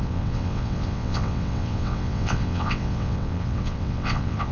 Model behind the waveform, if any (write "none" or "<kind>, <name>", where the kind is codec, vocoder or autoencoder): vocoder, WaveNeXt